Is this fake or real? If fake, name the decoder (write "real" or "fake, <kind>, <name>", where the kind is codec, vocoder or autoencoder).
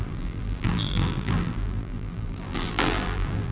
fake, vocoder, BigVGAN v2